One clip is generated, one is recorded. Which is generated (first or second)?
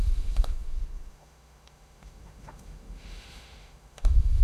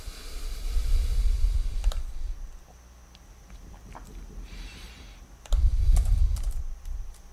first